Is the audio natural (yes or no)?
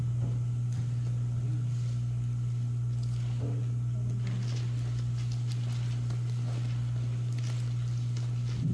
yes